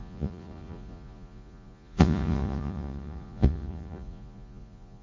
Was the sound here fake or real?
fake